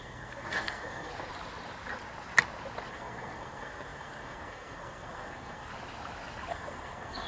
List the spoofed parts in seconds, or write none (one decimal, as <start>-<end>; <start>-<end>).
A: 0.0-1.1; 2.9-5.7; 6.5-7.3